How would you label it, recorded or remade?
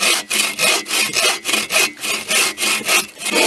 recorded